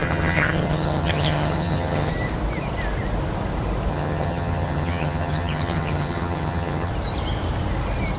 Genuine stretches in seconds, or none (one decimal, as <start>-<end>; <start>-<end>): 2.1-3.9; 6.9-8.2